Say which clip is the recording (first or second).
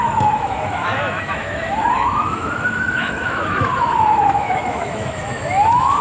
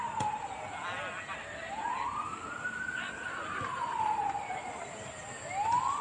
second